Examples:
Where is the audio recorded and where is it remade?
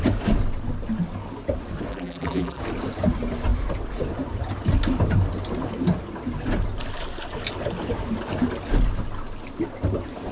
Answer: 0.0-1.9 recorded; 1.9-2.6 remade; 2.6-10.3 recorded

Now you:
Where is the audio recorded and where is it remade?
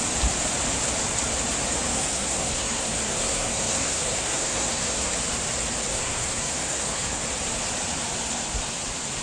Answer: 0.0-1.9 recorded; 1.9-5.1 remade; 5.1-5.9 recorded; 5.9-7.2 remade; 7.2-9.2 recorded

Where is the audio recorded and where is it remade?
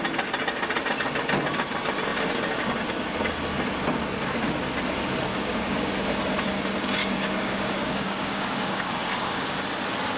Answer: 0.0-5.3 recorded; 5.3-5.9 remade; 5.9-7.0 recorded; 7.0-9.6 remade; 9.6-10.2 recorded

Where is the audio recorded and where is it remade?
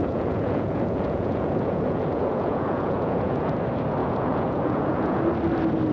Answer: 0.0-3.5 remade; 3.5-4.0 recorded; 4.0-5.2 remade; 5.2-5.9 recorded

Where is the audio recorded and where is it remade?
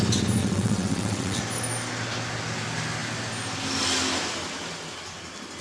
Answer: 0.0-0.4 recorded; 0.4-1.4 remade; 1.4-5.6 recorded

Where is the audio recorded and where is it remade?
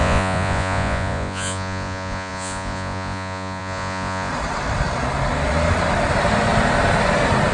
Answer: 0.0-4.3 remade; 4.3-7.5 recorded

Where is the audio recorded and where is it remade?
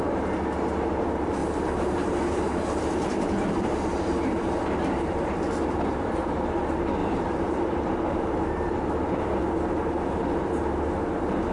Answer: 0.0-1.4 recorded; 1.4-4.6 remade; 4.6-7.0 recorded; 7.0-9.4 remade; 9.4-11.5 recorded